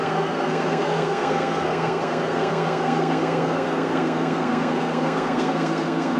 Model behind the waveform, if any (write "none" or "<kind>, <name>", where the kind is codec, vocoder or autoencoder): codec, SNAC